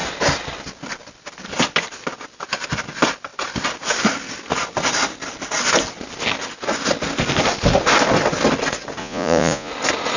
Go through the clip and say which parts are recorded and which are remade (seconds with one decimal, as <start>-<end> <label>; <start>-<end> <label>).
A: 0.0-9.0 recorded; 9.0-9.7 remade; 9.7-10.2 recorded